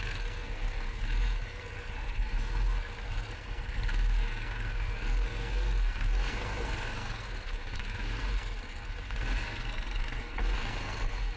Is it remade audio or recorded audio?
remade